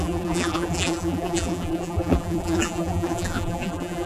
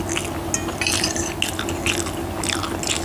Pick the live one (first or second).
second